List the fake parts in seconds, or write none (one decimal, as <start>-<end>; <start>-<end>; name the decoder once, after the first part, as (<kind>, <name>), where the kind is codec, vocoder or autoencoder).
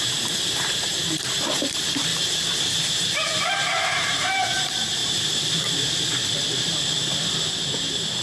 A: 0.0-6.2 (vocoder, BigVGAN v2)